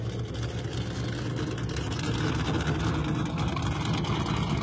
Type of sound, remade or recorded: recorded